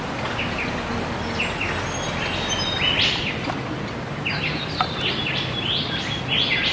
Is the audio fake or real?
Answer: real